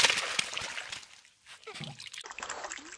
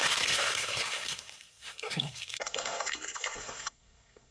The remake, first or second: second